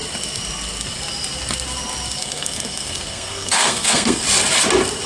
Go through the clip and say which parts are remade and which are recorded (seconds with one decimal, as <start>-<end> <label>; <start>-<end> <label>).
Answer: 0.0-2.2 recorded; 2.2-4.2 remade; 4.2-5.1 recorded